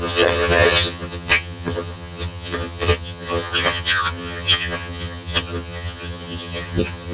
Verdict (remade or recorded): remade